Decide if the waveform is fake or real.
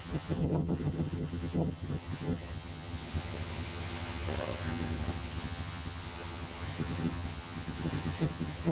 fake